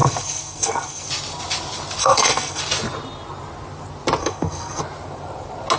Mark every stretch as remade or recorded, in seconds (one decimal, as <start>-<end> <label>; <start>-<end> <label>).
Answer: 0.0-1.1 remade; 1.1-2.0 recorded; 2.0-2.6 remade; 2.6-4.2 recorded; 4.2-4.8 remade; 4.8-5.8 recorded